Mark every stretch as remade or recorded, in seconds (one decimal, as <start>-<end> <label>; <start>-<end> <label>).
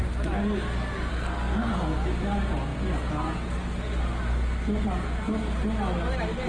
0.0-1.1 recorded; 1.1-1.7 remade; 1.7-6.5 recorded